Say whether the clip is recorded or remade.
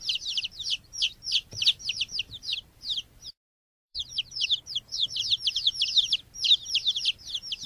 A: remade